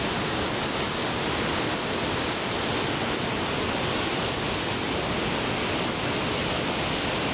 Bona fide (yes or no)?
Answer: yes